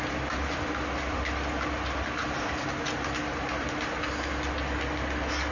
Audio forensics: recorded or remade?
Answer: recorded